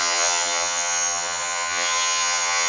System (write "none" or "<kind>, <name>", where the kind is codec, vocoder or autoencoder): vocoder, HiFi-GAN